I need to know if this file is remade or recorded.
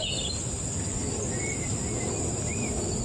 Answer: recorded